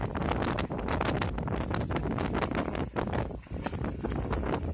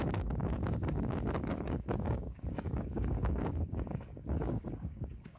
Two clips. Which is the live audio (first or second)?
first